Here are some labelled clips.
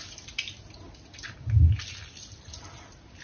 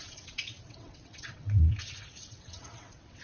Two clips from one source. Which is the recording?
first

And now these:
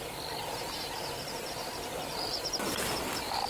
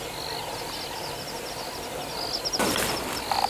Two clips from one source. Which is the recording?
second